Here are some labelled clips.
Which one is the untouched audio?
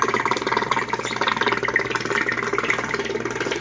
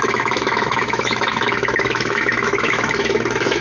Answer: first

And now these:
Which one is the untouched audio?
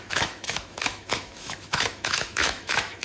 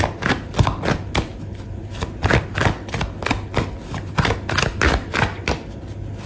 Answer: second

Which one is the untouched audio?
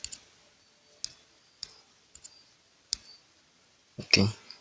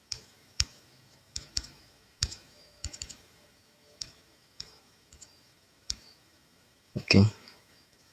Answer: first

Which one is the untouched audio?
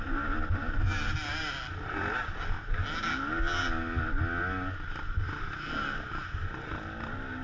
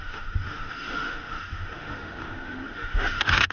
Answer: first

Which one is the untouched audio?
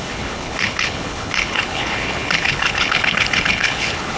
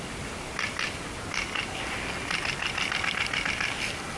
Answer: second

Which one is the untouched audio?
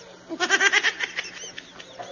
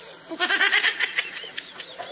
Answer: first